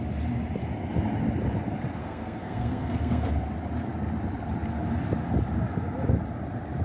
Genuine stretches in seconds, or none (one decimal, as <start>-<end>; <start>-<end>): 0.0-2.0; 3.3-6.8